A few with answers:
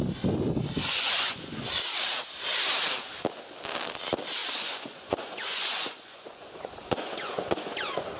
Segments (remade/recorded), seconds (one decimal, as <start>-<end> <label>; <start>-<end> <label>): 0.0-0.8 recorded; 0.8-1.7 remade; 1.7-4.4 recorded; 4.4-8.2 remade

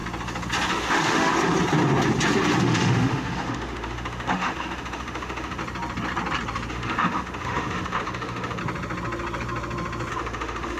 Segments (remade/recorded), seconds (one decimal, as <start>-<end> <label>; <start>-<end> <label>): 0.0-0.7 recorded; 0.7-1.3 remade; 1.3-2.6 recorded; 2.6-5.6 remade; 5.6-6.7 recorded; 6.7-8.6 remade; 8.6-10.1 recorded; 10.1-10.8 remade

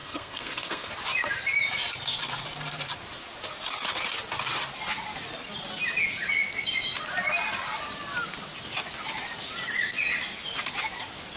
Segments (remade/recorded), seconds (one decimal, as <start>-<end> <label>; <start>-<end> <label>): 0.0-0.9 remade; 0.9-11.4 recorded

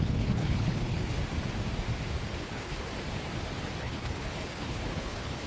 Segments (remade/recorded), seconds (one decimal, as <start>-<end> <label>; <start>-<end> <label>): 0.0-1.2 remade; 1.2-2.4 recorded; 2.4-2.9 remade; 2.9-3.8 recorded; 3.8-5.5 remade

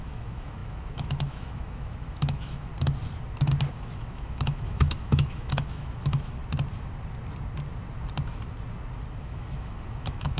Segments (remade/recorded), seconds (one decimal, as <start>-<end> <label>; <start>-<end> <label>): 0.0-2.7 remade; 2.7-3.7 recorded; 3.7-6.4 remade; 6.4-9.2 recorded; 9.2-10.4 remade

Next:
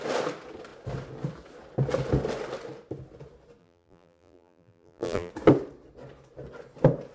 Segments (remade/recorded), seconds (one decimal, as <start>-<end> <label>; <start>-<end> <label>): 0.0-3.6 recorded; 3.6-5.3 remade; 5.3-7.1 recorded